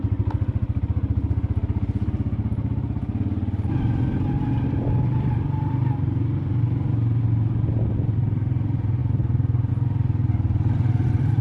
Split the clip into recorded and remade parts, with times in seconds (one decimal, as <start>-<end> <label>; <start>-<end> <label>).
0.0-11.4 recorded